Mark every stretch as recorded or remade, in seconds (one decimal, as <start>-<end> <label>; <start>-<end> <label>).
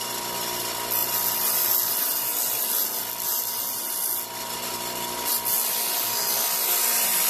0.0-7.3 recorded